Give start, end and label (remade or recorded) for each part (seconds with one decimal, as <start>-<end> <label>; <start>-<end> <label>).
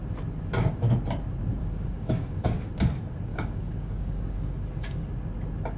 0.0-1.6 recorded; 1.6-2.7 remade; 2.7-3.3 recorded; 3.3-5.1 remade; 5.1-5.8 recorded